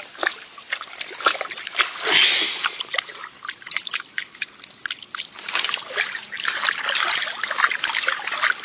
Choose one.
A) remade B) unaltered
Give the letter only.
B